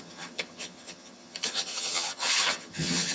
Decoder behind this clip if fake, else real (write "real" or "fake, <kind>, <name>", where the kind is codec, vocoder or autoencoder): fake, vocoder, HiFi-GAN